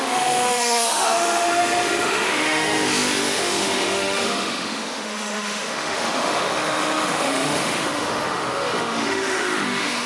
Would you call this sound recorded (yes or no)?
no